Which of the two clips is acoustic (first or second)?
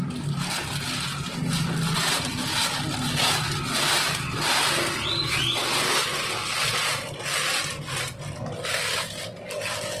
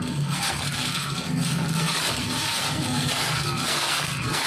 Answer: first